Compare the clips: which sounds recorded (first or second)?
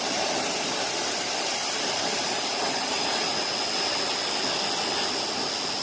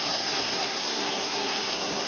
first